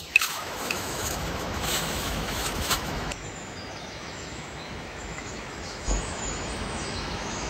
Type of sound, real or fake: fake